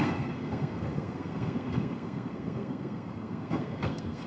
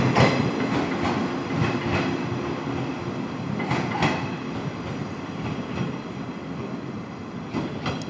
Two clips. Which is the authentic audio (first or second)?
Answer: second